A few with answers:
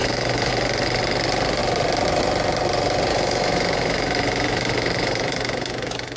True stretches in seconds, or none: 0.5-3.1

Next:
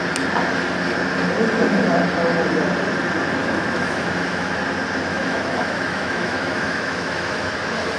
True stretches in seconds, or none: 0.0-3.4; 4.6-5.1; 7.5-8.0

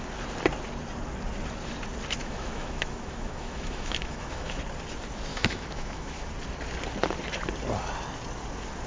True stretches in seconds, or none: 0.0-2.2; 4.6-5.3; 6.3-8.9

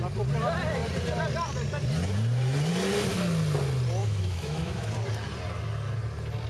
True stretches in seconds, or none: 0.0-4.0; 4.9-6.5

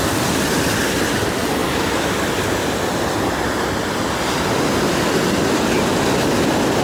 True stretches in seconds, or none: 0.0-6.8

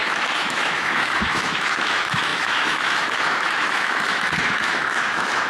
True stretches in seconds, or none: none

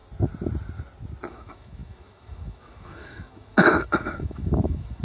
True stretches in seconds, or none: 0.0-1.3